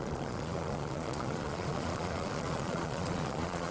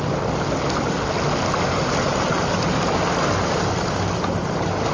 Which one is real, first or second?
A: second